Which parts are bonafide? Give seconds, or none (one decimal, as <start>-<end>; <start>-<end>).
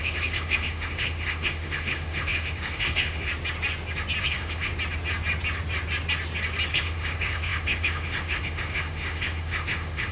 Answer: 3.3-4.2; 4.7-6.7